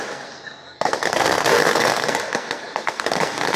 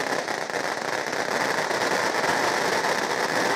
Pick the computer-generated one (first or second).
first